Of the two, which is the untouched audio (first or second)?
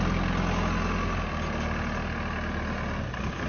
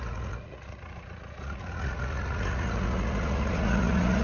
first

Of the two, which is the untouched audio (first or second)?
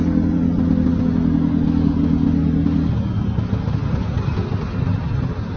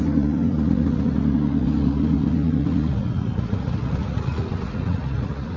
first